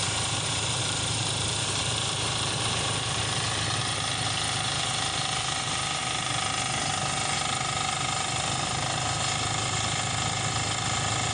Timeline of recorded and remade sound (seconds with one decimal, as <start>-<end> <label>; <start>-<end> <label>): 0.0-3.2 remade; 3.2-11.3 recorded